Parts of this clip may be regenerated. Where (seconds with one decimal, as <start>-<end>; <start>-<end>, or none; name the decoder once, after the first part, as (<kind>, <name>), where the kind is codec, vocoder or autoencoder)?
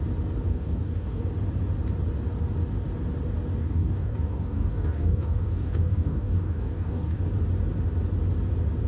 0.5-1.2 (codec, DAC); 3.6-7.2